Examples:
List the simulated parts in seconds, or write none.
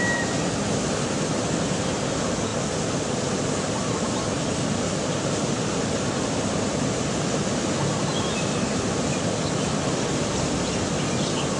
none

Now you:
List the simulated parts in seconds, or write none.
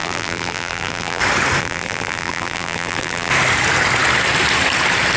0.0-1.2; 1.6-3.3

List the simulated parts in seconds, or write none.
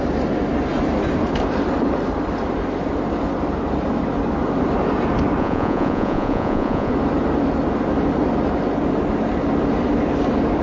5.4-6.9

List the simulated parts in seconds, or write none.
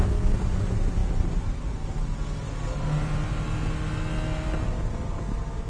none